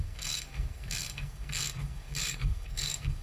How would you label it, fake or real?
fake